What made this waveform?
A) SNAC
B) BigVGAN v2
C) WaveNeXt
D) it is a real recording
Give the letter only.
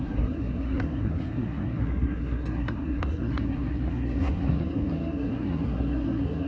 A